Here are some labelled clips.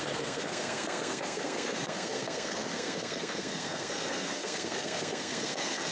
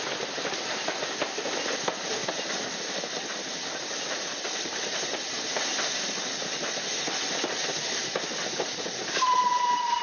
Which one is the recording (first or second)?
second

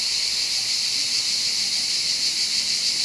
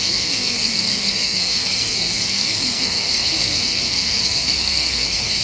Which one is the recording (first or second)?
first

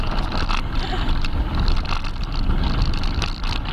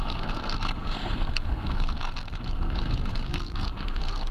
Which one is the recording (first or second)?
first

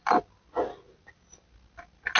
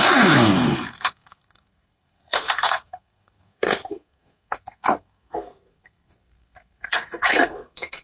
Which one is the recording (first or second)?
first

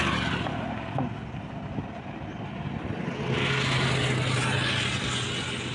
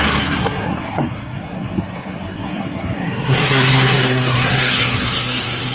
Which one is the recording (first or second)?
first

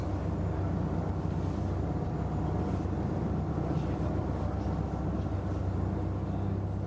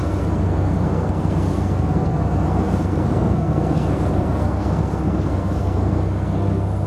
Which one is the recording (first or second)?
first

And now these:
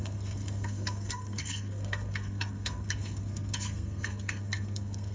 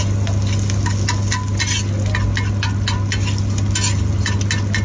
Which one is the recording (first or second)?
second